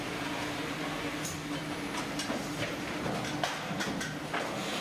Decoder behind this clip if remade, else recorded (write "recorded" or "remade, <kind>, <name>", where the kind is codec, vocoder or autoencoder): recorded